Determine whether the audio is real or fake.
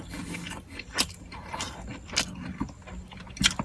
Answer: real